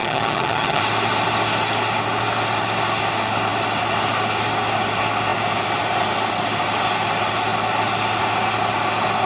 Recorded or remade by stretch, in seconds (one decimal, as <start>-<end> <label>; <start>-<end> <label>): 0.0-0.8 remade; 0.8-9.3 recorded